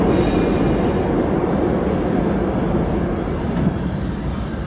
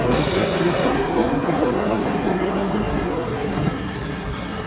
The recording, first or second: first